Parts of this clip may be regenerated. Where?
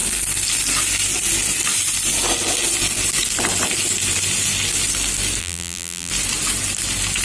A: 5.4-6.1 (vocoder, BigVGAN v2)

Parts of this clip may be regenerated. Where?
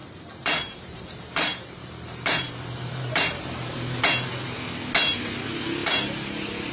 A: 0.0-4.0 (vocoder, BigVGAN v2); 5.8-6.7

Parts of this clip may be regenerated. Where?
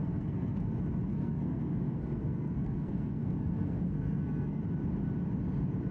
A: 0.0-0.7 (codec, SNAC); 1.1-4.6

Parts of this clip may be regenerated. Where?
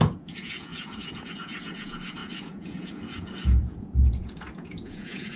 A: 0.0-5.4 (vocoder, Vocos)